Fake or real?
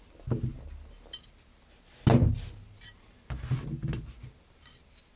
real